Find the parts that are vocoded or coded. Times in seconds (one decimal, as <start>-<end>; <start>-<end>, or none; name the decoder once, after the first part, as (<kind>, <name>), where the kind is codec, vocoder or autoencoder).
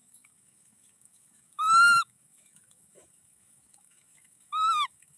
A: 0.0-5.2 (autoencoder, DAC-VAE)